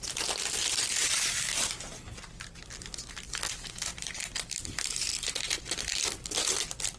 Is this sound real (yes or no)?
yes